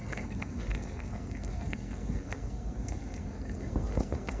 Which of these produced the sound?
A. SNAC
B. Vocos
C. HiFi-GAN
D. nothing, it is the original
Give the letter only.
A